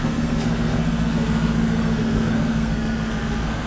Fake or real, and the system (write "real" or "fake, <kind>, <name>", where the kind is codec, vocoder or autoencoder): fake, codec, SNAC